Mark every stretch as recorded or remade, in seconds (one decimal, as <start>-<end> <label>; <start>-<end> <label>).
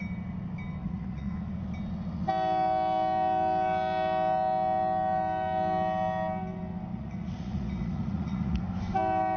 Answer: 0.0-0.8 recorded; 0.8-1.3 remade; 1.3-6.9 recorded; 6.9-8.6 remade; 8.6-9.4 recorded